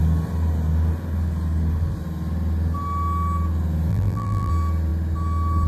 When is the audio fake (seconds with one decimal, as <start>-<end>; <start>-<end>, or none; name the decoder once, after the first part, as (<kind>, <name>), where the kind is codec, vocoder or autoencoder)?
3.9-4.5 (vocoder, BigVGAN v2)